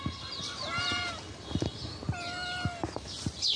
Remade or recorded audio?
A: recorded